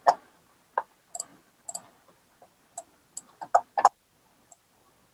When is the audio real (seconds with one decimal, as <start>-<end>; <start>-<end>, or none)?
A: 0.0-5.1